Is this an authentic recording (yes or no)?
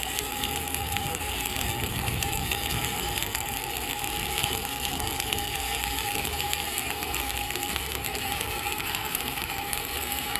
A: no